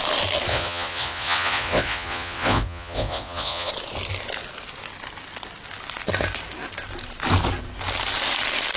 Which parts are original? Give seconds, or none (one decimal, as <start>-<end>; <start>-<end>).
0.0-0.5; 3.7-8.8